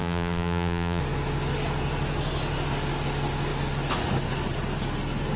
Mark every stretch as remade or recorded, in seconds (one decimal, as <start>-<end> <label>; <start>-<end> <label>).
0.0-1.0 remade; 1.0-5.4 recorded